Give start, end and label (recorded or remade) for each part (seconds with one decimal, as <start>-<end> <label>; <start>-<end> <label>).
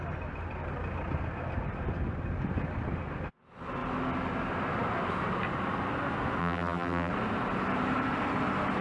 0.0-6.4 recorded; 6.4-7.1 remade; 7.1-8.8 recorded